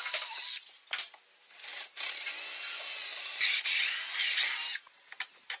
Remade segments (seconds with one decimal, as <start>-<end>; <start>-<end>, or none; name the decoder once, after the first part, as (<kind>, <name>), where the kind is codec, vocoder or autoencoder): none